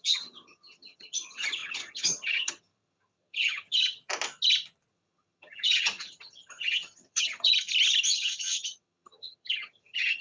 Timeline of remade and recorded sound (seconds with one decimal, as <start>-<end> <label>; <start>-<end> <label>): 0.0-4.0 remade; 4.0-4.9 recorded; 4.9-7.5 remade; 7.5-8.2 recorded; 8.2-10.2 remade